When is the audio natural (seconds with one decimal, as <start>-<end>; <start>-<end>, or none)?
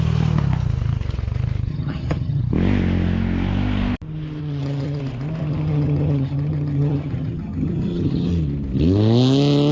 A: 0.0-1.7; 2.4-4.4; 5.0-5.4; 8.3-9.7